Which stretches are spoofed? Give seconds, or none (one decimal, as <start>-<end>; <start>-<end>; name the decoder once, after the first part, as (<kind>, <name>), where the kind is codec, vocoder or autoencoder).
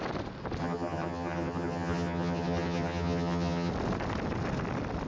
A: 0.6-3.7 (vocoder, HiFi-GAN)